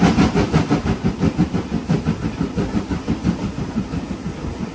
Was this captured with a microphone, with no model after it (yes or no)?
yes